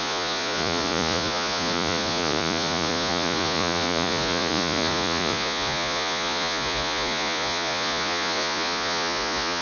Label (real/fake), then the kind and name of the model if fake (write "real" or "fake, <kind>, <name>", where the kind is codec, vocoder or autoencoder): fake, vocoder, Vocos